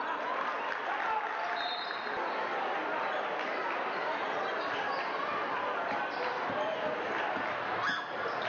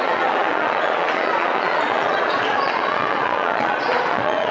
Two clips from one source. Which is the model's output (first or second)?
second